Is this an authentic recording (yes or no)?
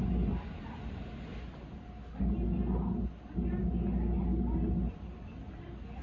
yes